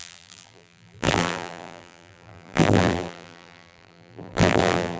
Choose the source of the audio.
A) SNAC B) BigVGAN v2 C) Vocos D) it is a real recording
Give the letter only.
B